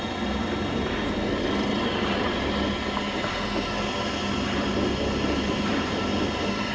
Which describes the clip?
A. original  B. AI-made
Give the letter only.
A